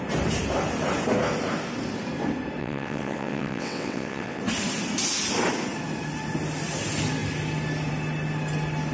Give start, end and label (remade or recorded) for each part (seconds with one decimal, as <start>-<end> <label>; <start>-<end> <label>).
0.0-2.6 recorded; 2.6-4.4 remade; 4.4-8.9 recorded